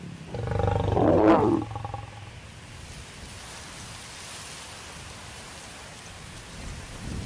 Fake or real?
real